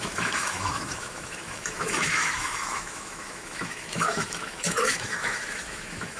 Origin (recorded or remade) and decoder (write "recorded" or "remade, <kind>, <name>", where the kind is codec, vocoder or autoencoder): remade, autoencoder, DAC-VAE